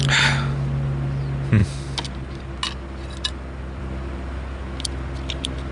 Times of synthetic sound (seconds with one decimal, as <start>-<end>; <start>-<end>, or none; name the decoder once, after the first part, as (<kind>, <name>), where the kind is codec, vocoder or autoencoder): none